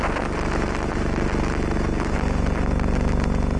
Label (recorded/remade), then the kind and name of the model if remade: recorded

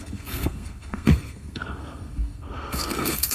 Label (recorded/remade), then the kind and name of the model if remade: remade, codec, SNAC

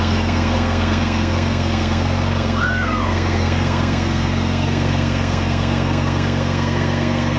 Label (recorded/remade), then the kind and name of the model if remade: remade, codec, SNAC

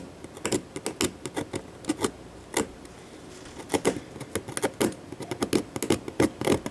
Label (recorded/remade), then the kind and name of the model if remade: recorded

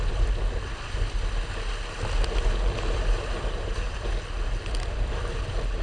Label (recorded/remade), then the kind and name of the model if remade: recorded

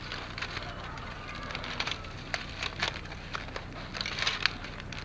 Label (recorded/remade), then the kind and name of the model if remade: recorded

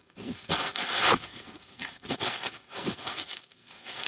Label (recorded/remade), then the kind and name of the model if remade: remade, codec, SNAC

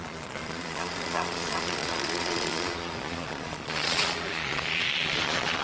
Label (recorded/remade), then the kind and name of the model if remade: remade, vocoder, Vocos